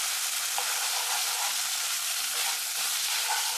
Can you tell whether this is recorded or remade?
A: remade